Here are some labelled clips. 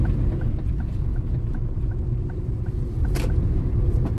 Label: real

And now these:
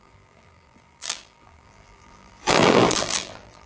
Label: fake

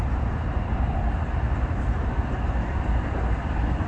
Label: real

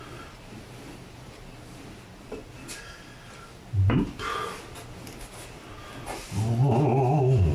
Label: real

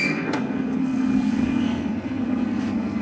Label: fake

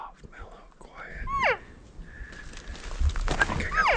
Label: real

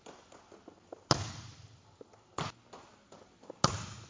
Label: real